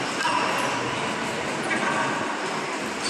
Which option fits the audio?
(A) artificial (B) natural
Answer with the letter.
B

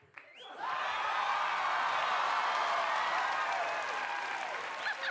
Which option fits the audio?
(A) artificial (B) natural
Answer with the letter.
B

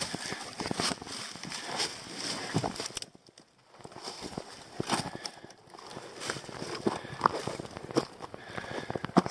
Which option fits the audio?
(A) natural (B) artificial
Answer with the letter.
A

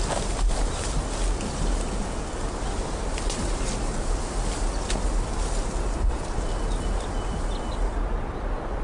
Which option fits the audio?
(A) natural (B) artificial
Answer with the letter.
A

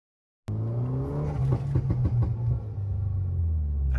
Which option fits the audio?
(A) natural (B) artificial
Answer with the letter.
A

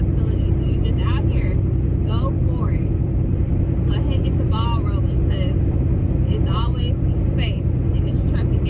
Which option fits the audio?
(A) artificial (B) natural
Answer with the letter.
B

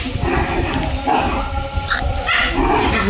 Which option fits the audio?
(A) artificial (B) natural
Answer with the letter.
B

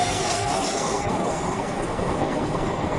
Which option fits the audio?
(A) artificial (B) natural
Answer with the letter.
A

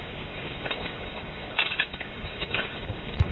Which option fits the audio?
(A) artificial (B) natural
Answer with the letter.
A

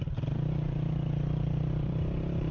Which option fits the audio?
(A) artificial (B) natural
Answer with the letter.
A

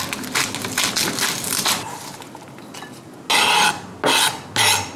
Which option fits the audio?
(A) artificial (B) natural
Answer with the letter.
B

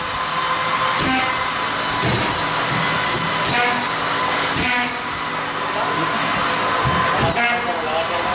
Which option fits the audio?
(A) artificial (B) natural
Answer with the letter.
B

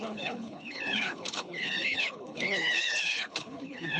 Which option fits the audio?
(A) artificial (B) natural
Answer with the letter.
A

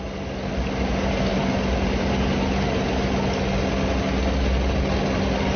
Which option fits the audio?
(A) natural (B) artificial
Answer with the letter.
A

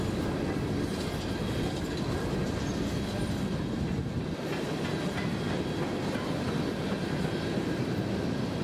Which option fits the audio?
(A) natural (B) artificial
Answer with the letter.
A